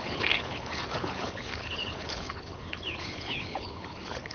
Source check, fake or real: fake